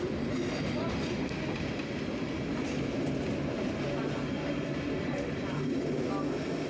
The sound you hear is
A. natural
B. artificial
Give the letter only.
A